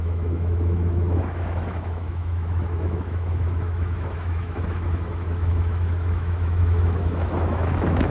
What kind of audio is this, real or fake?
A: fake